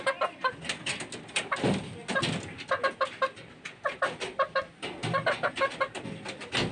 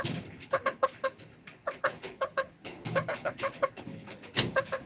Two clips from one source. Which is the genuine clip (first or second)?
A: first